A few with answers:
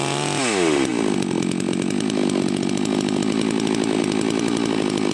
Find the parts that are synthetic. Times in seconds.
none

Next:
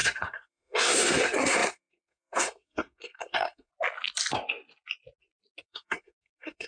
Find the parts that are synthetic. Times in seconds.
0.0-3.7 (codec, SNAC); 5.6-6.7

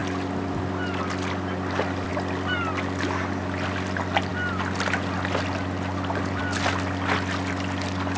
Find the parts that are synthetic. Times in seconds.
none

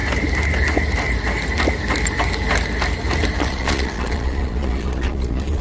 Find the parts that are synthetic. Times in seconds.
3.4-5.6 (vocoder, Vocos)

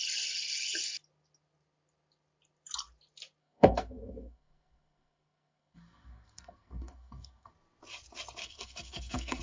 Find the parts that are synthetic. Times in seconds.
3.4-7.5 (codec, SNAC); 8.4-9.4

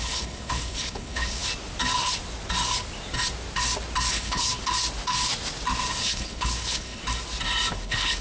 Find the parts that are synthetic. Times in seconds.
0.0-1.4 (codec, HILCodec); 4.1-4.5; 6.0-7.0; 7.7-8.2

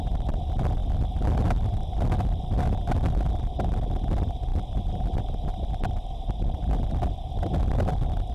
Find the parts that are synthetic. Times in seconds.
none